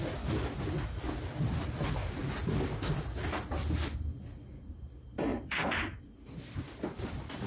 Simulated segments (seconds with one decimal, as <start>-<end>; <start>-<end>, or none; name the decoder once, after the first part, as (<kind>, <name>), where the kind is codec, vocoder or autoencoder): 2.0-2.7 (vocoder, BigVGAN v2); 5.3-6.4